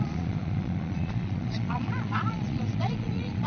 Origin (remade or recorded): remade